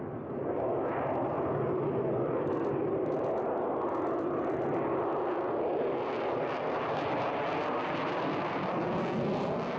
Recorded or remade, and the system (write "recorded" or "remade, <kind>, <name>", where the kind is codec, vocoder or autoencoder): recorded